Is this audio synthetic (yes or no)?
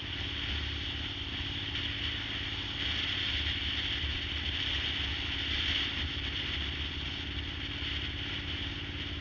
no